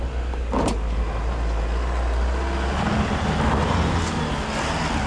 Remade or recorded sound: recorded